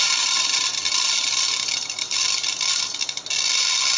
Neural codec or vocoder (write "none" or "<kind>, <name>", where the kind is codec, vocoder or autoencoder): none